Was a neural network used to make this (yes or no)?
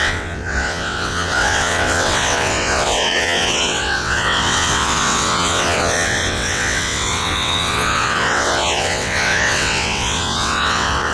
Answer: yes